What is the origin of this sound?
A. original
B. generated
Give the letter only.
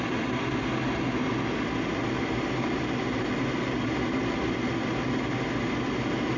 A